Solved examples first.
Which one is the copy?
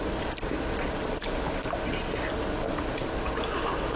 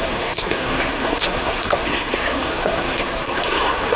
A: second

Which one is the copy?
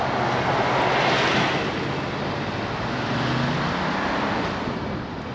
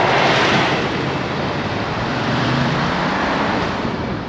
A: second